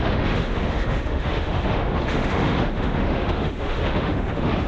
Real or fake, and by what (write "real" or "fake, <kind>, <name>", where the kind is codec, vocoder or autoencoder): fake, autoencoder, DAC-VAE